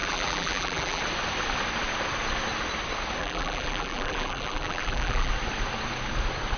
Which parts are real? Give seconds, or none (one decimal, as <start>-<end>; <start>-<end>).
1.0-3.2; 5.3-6.6